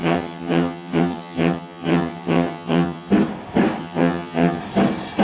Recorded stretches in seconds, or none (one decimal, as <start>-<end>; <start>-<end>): 3.1-3.8; 4.6-5.2